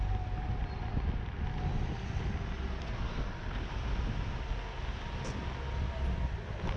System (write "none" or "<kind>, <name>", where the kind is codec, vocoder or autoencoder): none